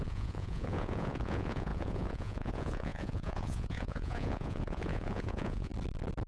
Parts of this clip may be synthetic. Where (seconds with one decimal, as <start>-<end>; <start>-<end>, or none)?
0.0-5.7